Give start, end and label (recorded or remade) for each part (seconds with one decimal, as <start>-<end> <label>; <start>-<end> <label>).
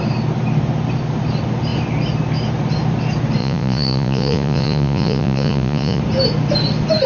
0.0-3.4 recorded; 3.4-6.0 remade; 6.0-7.1 recorded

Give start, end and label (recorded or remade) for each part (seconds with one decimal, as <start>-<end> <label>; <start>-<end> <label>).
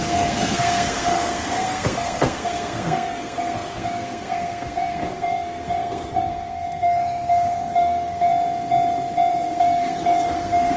0.0-8.3 remade; 8.3-9.3 recorded; 9.3-10.8 remade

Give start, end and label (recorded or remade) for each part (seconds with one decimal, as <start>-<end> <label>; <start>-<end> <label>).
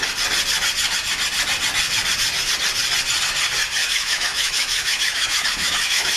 0.0-3.8 recorded; 3.8-6.2 remade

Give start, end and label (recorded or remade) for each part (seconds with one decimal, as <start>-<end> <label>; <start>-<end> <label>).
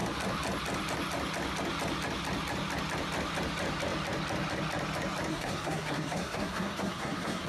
0.0-5.3 recorded; 5.3-7.5 remade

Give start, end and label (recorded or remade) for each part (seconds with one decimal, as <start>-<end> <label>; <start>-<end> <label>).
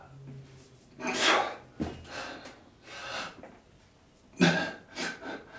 0.0-5.6 recorded